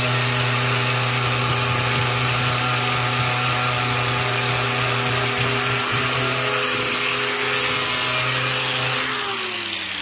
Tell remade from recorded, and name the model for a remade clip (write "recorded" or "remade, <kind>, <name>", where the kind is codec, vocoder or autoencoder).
recorded